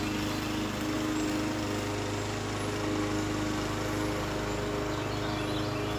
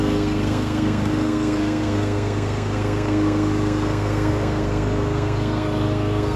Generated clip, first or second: second